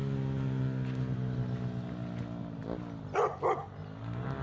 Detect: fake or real real